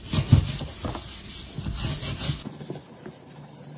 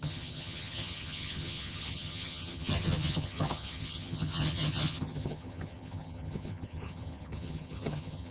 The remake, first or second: second